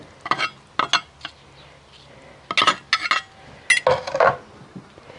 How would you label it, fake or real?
real